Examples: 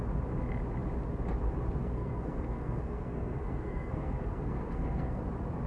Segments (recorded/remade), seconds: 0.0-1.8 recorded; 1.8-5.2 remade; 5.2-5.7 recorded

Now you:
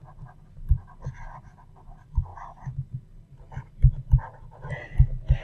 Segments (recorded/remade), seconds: 0.0-5.4 recorded

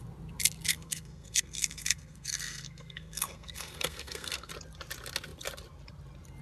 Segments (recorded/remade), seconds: 0.0-0.7 recorded; 0.7-4.5 remade; 4.5-6.4 recorded

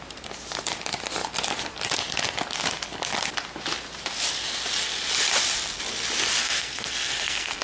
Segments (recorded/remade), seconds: 0.0-6.4 recorded; 6.4-7.6 remade

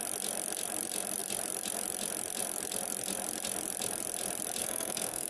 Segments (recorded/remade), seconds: 0.0-4.6 recorded; 4.6-5.3 remade

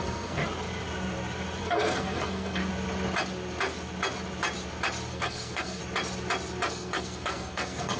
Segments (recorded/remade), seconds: 0.0-0.4 remade; 0.4-1.6 recorded; 1.6-2.6 remade; 2.6-5.1 recorded; 5.1-5.8 remade; 5.8-6.7 recorded; 6.7-8.0 remade

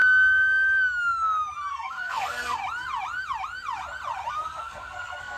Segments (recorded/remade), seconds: 0.0-1.7 recorded; 1.7-2.6 remade; 2.6-4.3 recorded; 4.3-5.4 remade

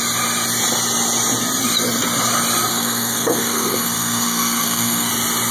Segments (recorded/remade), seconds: 0.0-2.7 recorded; 2.7-5.1 remade; 5.1-5.5 recorded